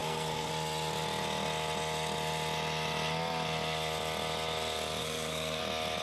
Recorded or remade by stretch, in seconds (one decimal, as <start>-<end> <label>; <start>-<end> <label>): 0.0-0.5 remade; 0.5-5.0 recorded; 5.0-5.6 remade; 5.6-6.0 recorded